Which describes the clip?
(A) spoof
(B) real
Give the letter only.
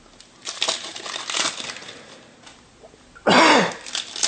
B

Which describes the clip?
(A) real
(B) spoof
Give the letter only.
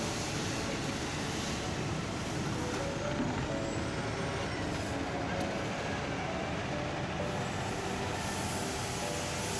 A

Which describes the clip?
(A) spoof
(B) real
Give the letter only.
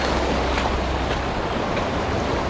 B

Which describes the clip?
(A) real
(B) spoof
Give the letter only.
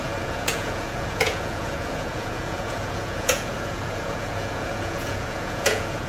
B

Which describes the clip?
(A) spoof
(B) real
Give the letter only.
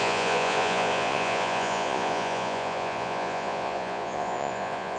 A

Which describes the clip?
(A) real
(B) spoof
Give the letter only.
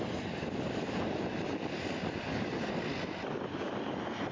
A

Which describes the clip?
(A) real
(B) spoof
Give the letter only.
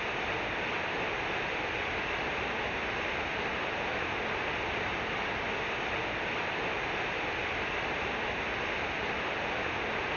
A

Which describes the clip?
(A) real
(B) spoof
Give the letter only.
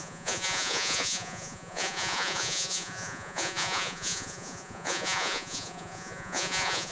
B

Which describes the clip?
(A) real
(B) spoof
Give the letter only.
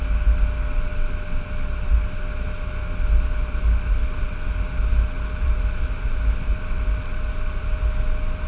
A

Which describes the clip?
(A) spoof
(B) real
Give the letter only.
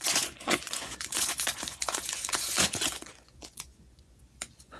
A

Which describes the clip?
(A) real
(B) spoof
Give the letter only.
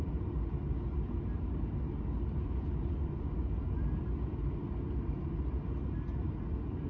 A